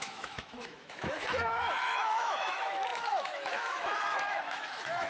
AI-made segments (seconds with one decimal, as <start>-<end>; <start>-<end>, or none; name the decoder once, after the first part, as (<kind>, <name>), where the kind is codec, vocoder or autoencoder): 0.0-5.1 (autoencoder, DAC-VAE)

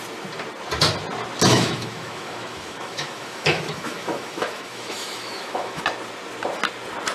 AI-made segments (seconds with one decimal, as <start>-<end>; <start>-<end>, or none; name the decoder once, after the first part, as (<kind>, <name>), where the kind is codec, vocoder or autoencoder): 1.5-5.8 (autoencoder, DAC-VAE)

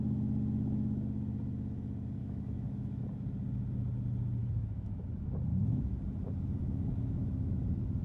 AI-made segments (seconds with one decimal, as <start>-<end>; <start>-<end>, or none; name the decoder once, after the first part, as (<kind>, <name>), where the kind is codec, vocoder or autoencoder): 2.2-3.0 (autoencoder, DAC-VAE); 4.4-5.0; 5.5-6.0; 6.6-7.6

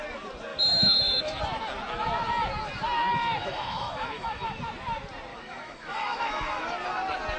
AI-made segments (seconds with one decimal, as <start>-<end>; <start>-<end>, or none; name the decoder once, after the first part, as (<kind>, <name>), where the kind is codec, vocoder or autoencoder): 0.5-1.4 (autoencoder, DAC-VAE); 3.4-4.6; 5.3-6.6

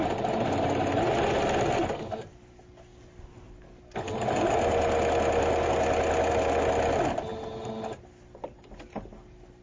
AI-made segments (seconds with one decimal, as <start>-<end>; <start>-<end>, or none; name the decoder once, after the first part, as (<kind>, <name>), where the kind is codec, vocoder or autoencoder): none

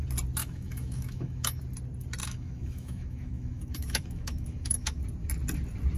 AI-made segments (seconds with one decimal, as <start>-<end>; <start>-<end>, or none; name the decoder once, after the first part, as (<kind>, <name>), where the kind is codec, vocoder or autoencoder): 0.4-1.6 (autoencoder, DAC-VAE); 2.2-5.0